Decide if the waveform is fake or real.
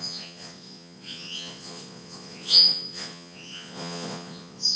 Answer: fake